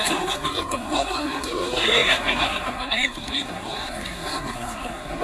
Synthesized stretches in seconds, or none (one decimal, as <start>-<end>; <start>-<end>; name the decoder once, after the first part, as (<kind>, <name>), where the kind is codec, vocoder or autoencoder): 0.0-5.2 (codec, SNAC)